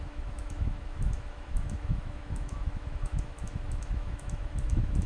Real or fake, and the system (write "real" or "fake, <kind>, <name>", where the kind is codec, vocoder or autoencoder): fake, autoencoder, DAC-VAE